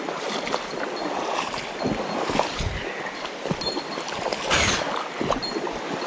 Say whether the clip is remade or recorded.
recorded